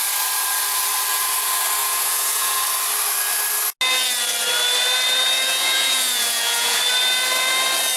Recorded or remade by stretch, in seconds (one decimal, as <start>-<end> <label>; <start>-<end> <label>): 0.0-1.8 recorded; 1.8-2.6 remade; 2.6-5.6 recorded; 5.6-6.8 remade; 6.8-8.0 recorded